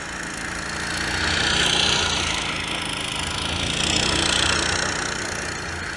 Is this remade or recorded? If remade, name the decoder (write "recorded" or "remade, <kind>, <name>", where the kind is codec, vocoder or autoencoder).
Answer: recorded